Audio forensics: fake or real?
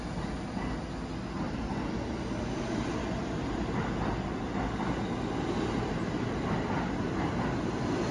real